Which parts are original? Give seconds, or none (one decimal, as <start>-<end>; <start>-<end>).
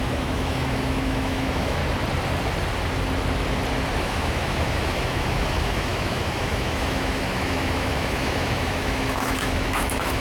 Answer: 1.8-4.0